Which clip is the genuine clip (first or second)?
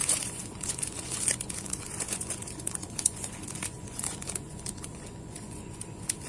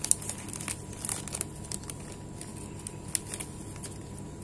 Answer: second